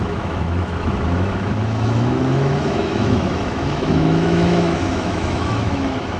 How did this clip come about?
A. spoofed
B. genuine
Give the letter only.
A